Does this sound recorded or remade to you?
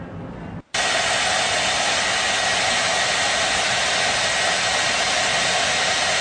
recorded